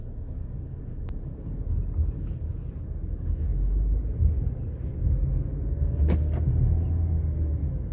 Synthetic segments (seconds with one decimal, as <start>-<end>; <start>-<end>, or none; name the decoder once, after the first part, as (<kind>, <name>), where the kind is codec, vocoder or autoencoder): none